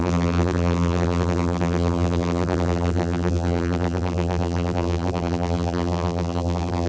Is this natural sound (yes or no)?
no